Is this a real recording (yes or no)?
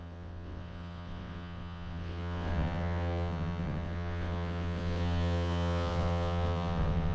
no